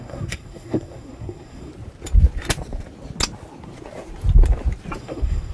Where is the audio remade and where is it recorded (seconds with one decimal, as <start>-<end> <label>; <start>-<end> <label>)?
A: 0.0-1.7 remade; 1.7-5.0 recorded; 5.0-5.5 remade